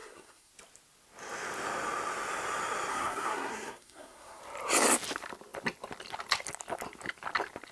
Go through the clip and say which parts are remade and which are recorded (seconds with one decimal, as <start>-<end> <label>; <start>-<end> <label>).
0.0-0.5 remade; 0.5-2.9 recorded; 2.9-4.4 remade; 4.4-7.7 recorded